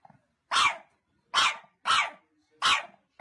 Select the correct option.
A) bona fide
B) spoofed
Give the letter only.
A